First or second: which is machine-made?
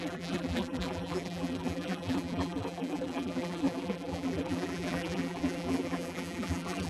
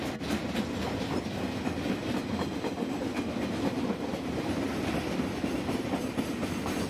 first